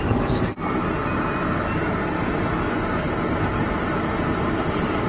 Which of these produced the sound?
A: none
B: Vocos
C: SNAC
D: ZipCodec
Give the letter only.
A